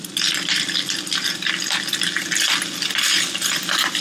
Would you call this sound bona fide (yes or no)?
yes